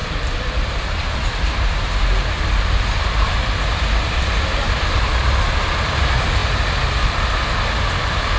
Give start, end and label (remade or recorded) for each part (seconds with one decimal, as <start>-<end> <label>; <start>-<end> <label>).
0.0-4.2 remade; 4.2-8.4 recorded